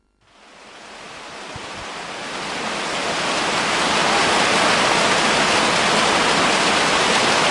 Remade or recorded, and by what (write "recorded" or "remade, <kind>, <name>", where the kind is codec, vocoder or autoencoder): recorded